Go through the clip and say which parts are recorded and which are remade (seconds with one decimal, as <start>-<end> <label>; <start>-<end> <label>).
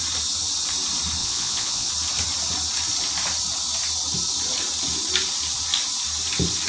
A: 0.0-1.2 recorded; 1.2-1.9 remade; 1.9-6.7 recorded